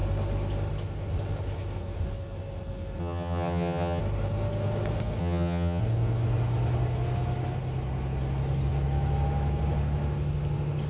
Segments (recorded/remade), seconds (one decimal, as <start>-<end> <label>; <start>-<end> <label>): 0.0-3.0 recorded; 3.0-4.0 remade; 4.0-5.2 recorded; 5.2-5.8 remade; 5.8-10.9 recorded